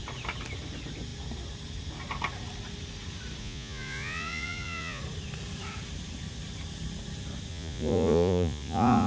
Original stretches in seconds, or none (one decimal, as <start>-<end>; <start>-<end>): 0.0-3.4; 5.0-7.5